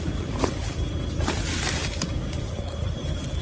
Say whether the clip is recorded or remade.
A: recorded